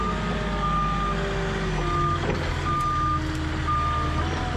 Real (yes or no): yes